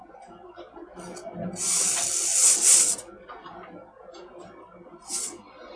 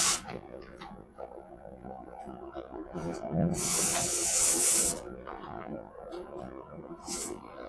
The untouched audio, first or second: first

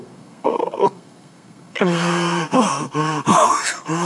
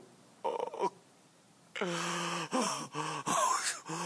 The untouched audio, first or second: second